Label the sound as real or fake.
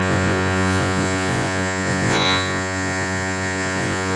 fake